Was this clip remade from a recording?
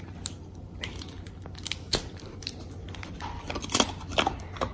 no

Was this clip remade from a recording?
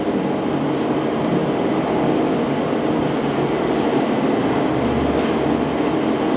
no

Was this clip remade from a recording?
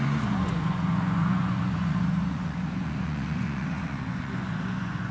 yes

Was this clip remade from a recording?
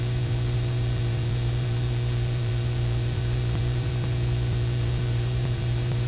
yes